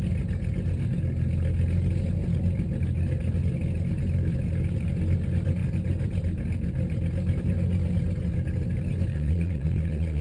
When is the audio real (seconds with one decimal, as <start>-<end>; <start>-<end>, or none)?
0.0-9.1